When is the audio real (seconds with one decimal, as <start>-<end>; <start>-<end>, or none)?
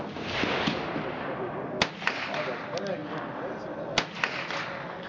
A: 0.0-5.1